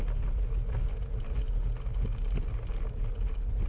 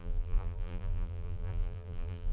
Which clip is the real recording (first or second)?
first